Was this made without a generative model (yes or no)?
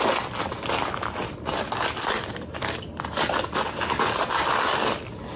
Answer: yes